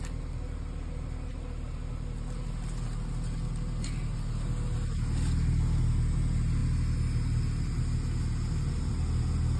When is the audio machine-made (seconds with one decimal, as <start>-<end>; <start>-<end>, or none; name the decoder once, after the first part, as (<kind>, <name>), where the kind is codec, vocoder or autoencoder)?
none